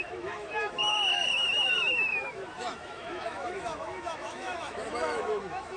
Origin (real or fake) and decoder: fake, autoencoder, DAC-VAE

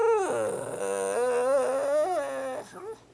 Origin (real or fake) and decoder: real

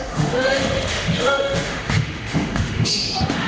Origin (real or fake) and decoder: fake, autoencoder, DAC-VAE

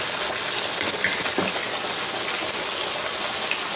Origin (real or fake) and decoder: real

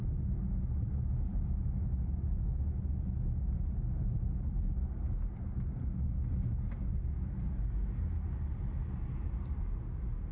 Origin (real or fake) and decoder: real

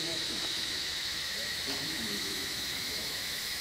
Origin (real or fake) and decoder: fake, autoencoder, DAC-VAE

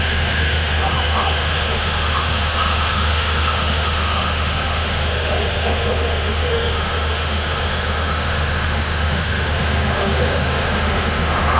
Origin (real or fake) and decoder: fake, autoencoder, DAC-VAE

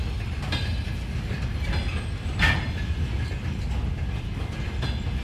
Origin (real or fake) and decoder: real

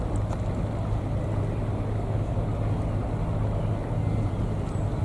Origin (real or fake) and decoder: real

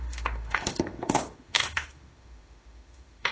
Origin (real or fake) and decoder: fake, autoencoder, DAC-VAE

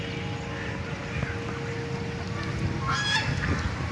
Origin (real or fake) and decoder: real